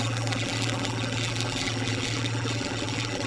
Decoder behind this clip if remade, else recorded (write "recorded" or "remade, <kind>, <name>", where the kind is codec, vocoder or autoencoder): remade, vocoder, BigVGAN v2